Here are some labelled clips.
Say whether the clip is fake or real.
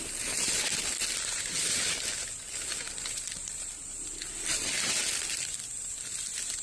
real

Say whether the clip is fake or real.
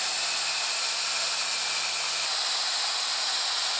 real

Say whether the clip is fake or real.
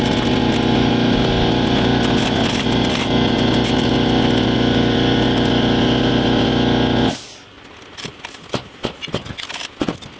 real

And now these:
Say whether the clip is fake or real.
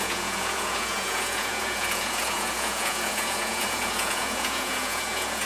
fake